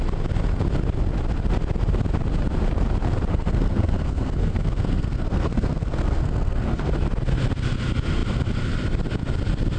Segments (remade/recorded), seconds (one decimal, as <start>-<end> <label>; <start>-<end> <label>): 0.0-3.3 recorded; 3.3-6.9 remade; 6.9-9.8 recorded